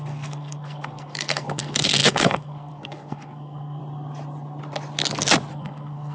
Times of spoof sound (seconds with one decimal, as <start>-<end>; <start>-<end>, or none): 0.0-3.8; 5.5-6.1